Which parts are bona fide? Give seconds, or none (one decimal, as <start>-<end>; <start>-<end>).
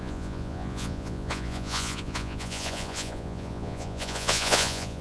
none